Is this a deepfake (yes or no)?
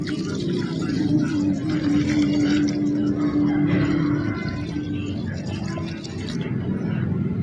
no